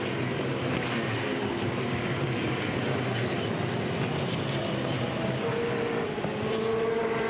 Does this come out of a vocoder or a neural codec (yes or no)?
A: no